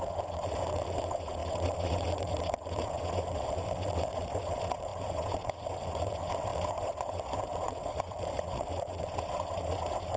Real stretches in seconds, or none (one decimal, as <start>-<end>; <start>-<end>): none